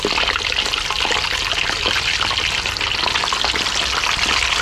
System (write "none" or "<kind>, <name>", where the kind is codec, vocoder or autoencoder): none